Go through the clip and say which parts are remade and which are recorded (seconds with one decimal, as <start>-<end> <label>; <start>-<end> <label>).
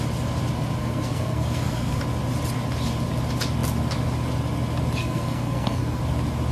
0.0-0.8 recorded; 0.8-2.0 remade; 2.0-5.0 recorded; 5.0-6.0 remade; 6.0-6.5 recorded